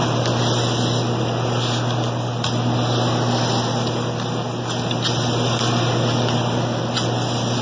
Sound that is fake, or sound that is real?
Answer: real